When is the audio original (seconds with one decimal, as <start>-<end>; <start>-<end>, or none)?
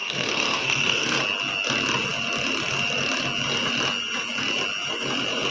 1.2-5.5